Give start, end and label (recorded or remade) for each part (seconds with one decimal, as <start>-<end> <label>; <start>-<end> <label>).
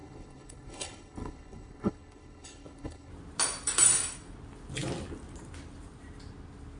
0.0-3.1 remade; 3.1-6.8 recorded